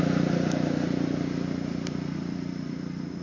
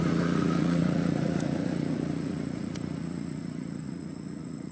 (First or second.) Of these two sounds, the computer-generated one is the second